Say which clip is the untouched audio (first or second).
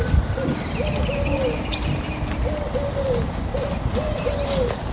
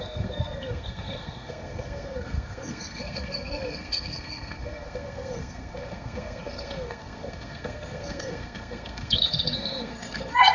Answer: first